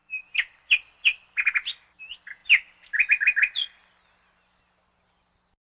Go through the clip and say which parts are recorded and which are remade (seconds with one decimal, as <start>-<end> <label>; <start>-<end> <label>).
0.0-5.6 recorded

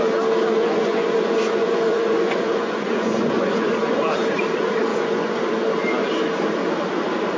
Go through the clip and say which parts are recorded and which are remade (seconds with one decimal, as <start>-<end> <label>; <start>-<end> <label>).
0.0-0.6 recorded; 0.6-3.7 remade; 3.7-4.9 recorded; 4.9-5.4 remade; 5.4-7.4 recorded

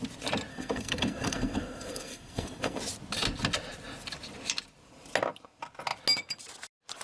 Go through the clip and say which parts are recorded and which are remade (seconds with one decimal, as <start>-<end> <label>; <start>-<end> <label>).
0.0-0.5 recorded; 0.5-2.8 remade; 2.8-7.0 recorded

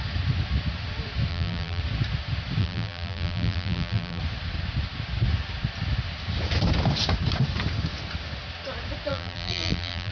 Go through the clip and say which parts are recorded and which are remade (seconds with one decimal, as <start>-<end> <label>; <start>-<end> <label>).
0.0-1.3 recorded; 1.3-1.8 remade; 1.8-2.6 recorded; 2.6-4.2 remade; 4.2-9.1 recorded; 9.1-10.1 remade

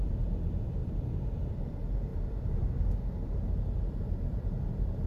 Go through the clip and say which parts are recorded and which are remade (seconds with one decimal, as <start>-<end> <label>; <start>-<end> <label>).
0.0-5.1 recorded